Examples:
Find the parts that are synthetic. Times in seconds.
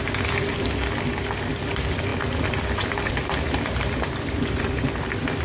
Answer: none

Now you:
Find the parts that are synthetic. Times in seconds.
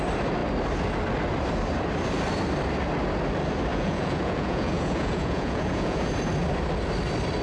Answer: 3.7-6.1 (vocoder, Vocos)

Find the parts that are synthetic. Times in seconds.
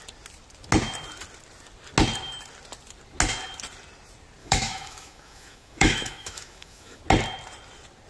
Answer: 4.4-7.0 (autoencoder, DAC-VAE)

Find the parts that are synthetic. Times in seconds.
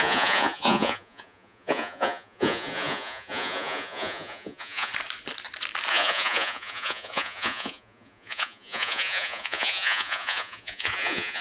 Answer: 0.0-4.9 (vocoder, Vocos); 5.9-11.4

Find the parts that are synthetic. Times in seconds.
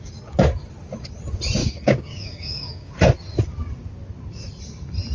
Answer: 1.6-2.9 (codec, DAC)